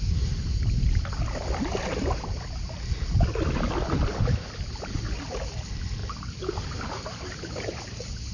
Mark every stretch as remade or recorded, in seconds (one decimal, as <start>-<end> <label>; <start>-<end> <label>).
0.0-8.3 recorded